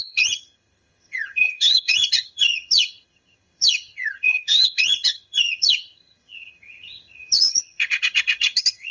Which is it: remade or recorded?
remade